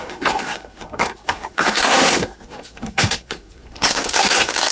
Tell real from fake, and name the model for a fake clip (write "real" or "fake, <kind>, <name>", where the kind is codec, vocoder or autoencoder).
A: fake, codec, SNAC